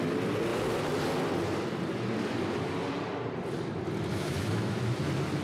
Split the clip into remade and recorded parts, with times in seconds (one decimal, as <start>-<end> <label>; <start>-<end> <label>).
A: 0.0-4.1 recorded; 4.1-4.8 remade; 4.8-5.4 recorded